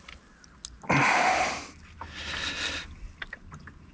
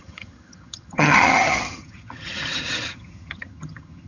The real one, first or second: first